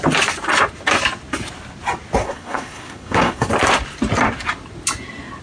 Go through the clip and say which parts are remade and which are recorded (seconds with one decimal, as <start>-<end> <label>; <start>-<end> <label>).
0.0-2.2 recorded; 2.2-3.5 remade; 3.5-5.4 recorded